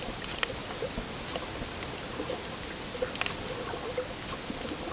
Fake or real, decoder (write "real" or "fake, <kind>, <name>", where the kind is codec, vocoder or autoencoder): real